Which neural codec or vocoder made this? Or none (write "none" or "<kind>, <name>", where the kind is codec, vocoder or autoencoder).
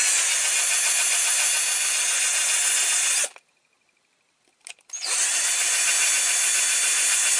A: none